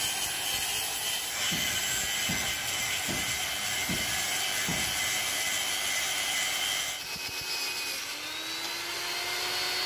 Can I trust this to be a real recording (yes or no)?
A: yes